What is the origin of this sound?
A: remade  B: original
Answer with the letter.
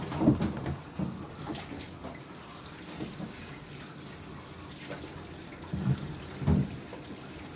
B